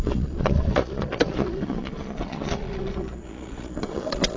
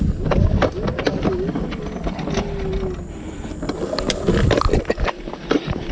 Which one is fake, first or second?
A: first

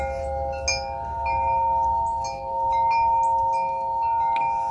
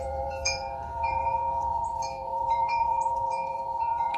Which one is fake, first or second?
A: second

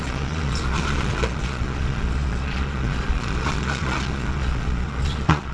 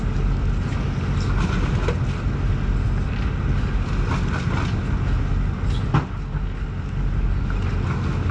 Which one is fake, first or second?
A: first